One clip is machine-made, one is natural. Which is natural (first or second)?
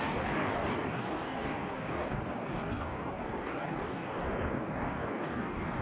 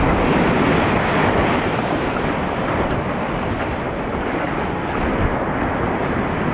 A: second